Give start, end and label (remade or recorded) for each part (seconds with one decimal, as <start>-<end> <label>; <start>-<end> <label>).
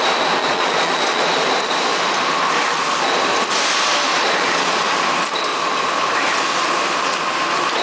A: 0.0-0.4 recorded; 0.4-1.2 remade; 1.2-4.1 recorded; 4.1-4.8 remade; 4.8-7.8 recorded